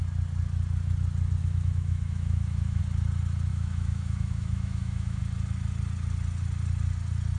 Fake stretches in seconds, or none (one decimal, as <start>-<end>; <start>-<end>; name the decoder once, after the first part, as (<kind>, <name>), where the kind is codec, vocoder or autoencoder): 1.4-2.8 (autoencoder, DAC-VAE); 3.5-5.2